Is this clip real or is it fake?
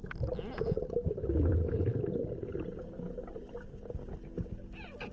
real